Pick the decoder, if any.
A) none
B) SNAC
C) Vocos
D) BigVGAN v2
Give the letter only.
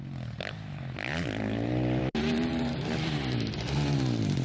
A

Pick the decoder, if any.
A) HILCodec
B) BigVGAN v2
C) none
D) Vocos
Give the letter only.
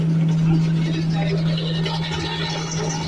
C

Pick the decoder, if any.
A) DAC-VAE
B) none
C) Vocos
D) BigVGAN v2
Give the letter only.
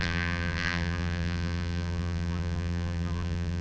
D